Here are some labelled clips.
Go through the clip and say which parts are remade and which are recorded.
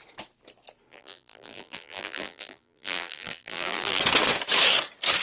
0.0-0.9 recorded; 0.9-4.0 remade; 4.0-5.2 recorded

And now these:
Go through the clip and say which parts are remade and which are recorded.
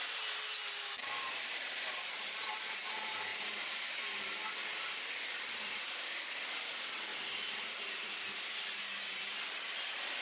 0.0-3.3 recorded; 3.3-5.8 remade; 5.8-7.1 recorded; 7.1-8.1 remade; 8.1-10.2 recorded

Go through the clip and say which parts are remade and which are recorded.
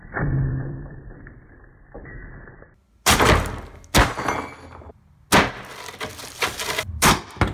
0.0-2.0 remade; 2.0-6.2 recorded; 6.2-7.5 remade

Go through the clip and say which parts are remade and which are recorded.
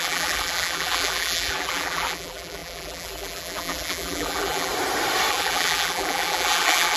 0.0-4.7 remade; 4.7-5.3 recorded; 5.3-7.0 remade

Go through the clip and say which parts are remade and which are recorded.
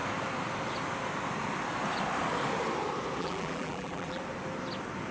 0.0-3.2 recorded; 3.2-4.2 remade; 4.2-5.1 recorded